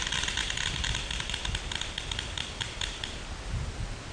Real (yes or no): yes